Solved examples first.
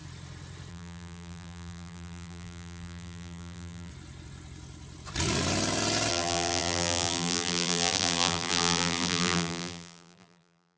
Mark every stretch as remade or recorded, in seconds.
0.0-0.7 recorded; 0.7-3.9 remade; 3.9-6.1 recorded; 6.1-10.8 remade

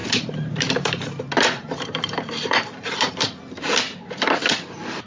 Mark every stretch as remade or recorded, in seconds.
0.0-3.1 remade; 3.1-5.1 recorded

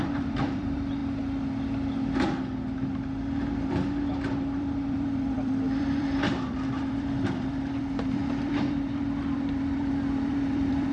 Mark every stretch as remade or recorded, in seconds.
0.0-1.0 remade; 1.0-3.7 recorded; 3.7-10.9 remade

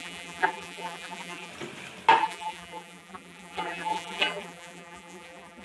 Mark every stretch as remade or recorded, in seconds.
0.0-1.5 remade; 1.5-2.2 recorded; 2.2-5.6 remade

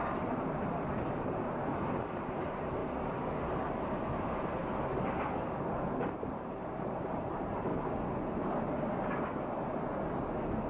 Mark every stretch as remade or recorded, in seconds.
0.0-2.8 remade; 2.8-3.4 recorded; 3.4-4.6 remade; 4.6-5.7 recorded; 5.7-7.7 remade; 7.7-10.7 recorded

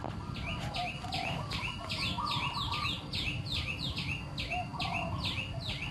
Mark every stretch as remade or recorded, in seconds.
0.0-5.9 recorded